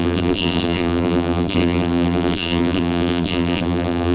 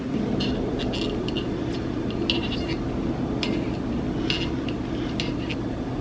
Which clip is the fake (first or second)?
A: first